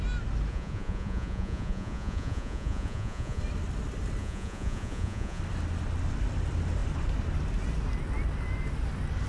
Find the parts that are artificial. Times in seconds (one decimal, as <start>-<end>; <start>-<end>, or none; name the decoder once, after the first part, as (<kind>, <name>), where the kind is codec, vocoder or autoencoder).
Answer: 0.5-3.4 (vocoder, Vocos); 4.2-5.4